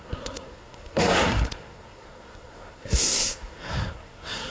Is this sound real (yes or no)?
no